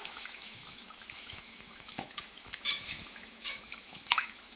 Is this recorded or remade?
remade